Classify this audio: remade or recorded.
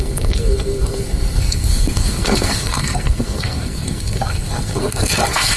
remade